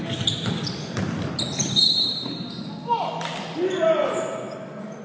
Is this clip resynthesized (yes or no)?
no